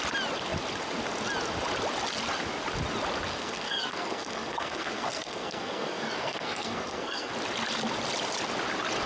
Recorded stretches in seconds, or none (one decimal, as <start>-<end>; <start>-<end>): 0.0-3.3; 7.3-9.1

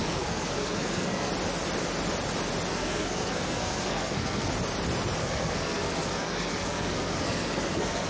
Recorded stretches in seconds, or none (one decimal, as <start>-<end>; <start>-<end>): 1.3-2.7; 4.5-5.2

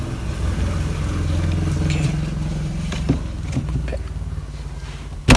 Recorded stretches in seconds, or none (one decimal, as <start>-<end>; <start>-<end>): 0.0-2.5; 3.2-5.4

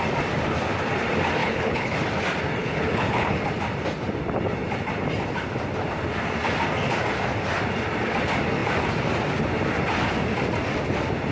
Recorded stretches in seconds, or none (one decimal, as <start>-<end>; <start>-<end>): 0.0-1.4; 2.0-2.6; 3.3-11.3

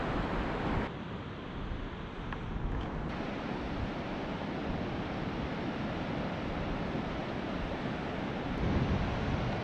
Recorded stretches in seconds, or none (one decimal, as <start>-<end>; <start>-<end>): 0.0-9.6